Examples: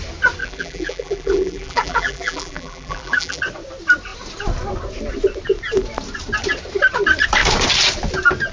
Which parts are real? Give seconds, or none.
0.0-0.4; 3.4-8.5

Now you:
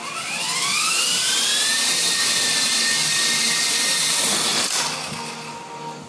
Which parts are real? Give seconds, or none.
0.0-6.1

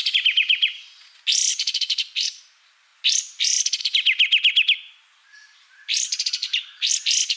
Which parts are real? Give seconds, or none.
0.0-1.5; 2.4-5.3; 6.9-7.4